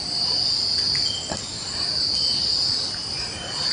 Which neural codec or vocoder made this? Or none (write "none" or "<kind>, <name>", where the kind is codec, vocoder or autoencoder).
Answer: none